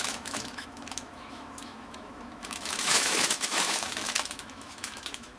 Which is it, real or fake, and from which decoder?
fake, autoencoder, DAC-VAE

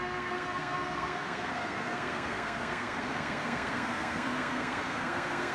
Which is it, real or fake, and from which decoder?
fake, codec, SNAC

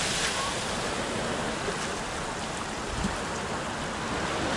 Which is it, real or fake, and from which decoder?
real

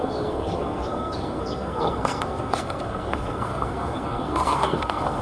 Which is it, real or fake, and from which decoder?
fake, codec, SNAC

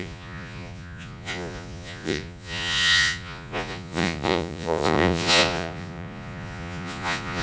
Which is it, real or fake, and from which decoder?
fake, vocoder, Vocos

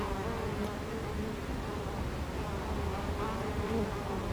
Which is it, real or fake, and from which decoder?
real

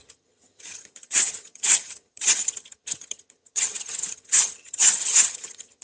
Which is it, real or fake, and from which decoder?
fake, vocoder, HiFi-GAN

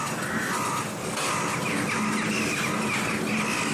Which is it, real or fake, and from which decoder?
real